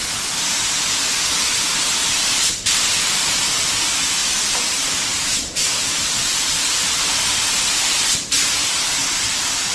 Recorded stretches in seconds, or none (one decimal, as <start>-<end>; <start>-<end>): 0.0-2.0; 3.5-4.2; 9.0-9.7